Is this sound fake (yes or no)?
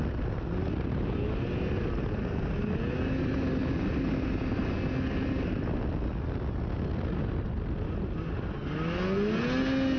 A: no